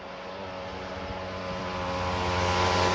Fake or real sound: real